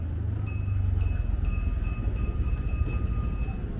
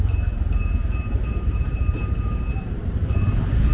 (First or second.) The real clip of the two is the first